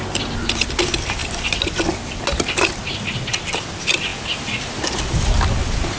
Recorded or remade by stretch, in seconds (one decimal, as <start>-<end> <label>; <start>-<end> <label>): 0.0-6.0 recorded